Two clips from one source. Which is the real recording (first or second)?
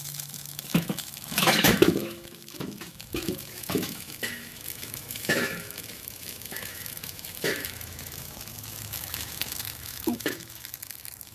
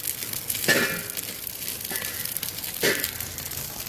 second